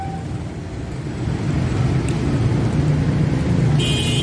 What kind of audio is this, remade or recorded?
recorded